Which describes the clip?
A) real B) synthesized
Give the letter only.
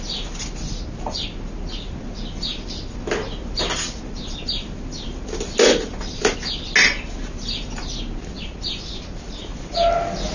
A